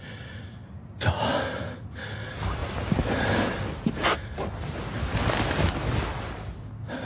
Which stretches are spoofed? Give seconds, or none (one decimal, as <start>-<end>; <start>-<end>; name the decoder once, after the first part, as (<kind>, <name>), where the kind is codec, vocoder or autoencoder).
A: none